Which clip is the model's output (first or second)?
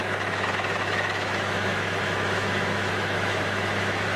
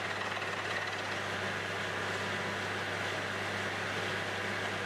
first